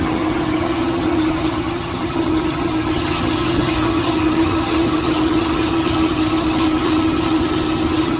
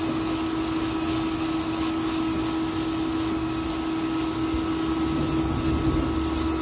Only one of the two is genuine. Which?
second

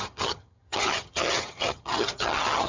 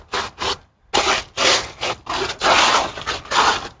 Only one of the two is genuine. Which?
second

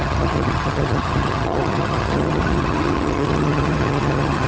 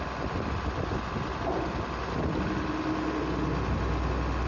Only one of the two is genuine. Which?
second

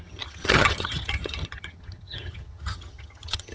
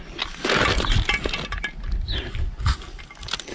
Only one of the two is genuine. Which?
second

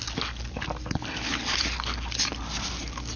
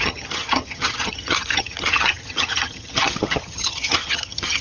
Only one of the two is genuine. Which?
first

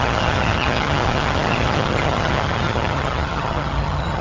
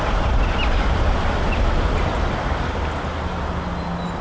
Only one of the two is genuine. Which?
second